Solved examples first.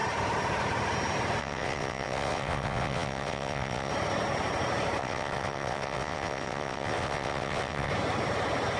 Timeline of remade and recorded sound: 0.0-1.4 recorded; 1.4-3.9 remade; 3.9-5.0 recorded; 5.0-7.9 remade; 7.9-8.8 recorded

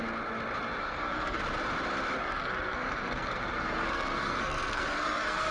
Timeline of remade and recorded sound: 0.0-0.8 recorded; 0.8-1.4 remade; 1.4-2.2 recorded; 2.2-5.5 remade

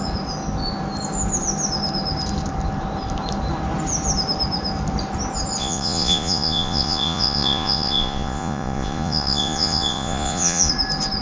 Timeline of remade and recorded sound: 0.0-5.6 recorded; 5.6-10.7 remade; 10.7-11.2 recorded

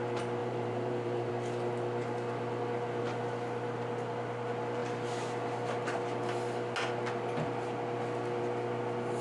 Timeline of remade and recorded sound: 0.0-0.4 recorded; 0.4-1.3 remade; 1.3-9.2 recorded

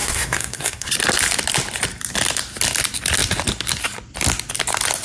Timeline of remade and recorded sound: 0.0-0.9 remade; 0.9-5.0 recorded

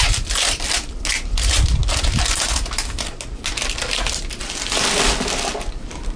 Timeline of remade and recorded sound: 0.0-6.2 recorded

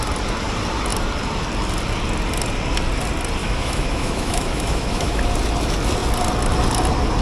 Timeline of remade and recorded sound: 0.0-3.4 recorded; 3.4-5.2 remade; 5.2-7.2 recorded